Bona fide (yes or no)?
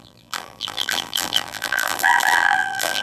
no